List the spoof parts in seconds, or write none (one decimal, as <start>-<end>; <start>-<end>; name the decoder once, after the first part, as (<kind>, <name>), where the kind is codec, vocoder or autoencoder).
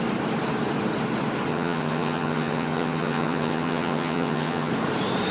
1.5-4.7 (vocoder, HiFi-GAN)